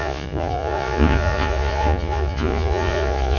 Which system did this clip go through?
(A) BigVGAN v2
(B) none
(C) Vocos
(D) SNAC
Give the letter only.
C